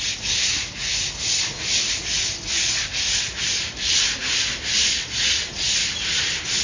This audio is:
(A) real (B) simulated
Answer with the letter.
A